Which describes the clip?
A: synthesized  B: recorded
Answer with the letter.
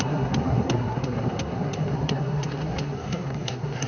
A